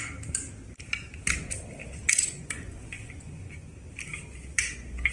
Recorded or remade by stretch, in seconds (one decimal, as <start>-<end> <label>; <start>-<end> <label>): 0.0-1.8 recorded; 1.8-3.7 remade; 3.7-4.5 recorded; 4.5-5.1 remade